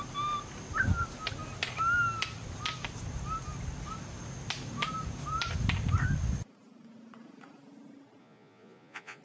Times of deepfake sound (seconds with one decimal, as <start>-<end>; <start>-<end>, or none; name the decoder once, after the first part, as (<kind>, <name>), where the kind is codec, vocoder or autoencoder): 8.2-9.2 (vocoder, Vocos)